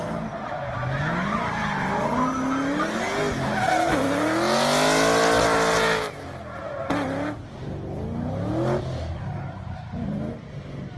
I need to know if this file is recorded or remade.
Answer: recorded